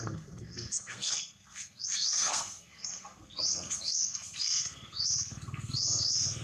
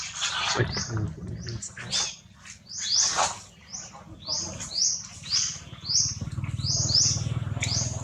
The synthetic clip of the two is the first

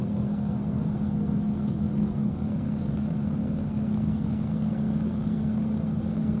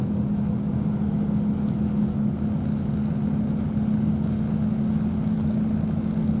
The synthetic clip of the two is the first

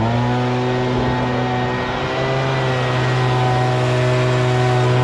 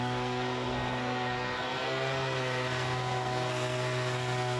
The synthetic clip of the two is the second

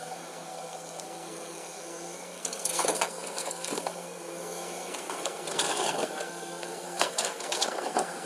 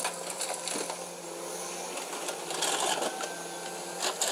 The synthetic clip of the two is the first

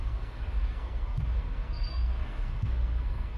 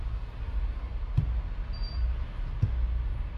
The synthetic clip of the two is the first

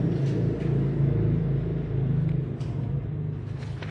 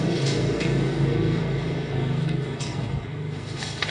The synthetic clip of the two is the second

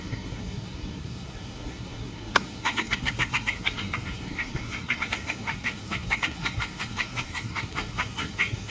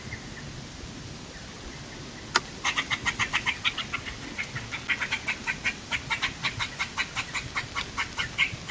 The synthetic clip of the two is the first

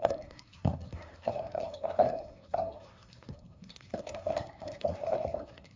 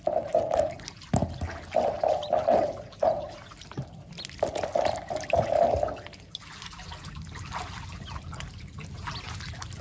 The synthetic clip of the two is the first